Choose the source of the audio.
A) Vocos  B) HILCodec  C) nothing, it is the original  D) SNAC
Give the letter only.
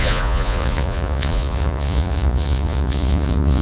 A